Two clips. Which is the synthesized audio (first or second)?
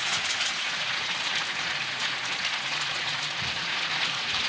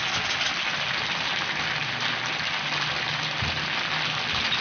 first